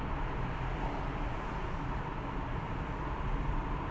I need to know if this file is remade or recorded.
recorded